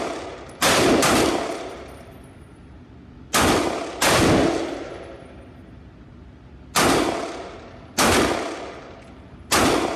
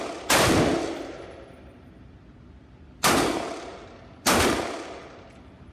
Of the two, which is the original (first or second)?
first